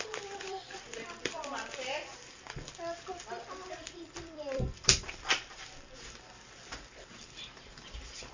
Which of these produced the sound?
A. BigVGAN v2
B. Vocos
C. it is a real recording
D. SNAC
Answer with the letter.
A